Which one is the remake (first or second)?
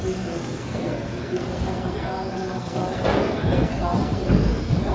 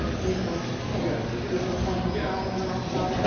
first